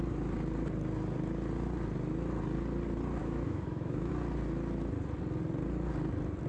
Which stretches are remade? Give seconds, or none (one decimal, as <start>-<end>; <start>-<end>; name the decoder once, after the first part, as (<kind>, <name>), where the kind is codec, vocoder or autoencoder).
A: 3.2-4.1 (autoencoder, DAC-VAE)